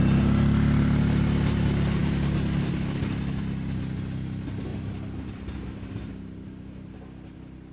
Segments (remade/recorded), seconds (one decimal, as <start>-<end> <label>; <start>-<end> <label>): 0.0-2.0 recorded; 2.0-2.7 remade; 2.7-4.7 recorded; 4.7-6.2 remade; 6.2-7.7 recorded